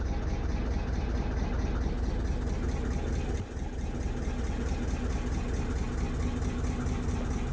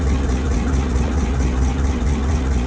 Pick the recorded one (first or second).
first